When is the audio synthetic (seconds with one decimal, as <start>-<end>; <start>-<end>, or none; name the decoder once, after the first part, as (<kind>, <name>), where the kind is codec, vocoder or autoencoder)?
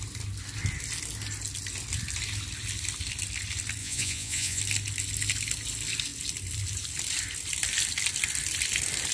3.8-4.6 (vocoder, Vocos)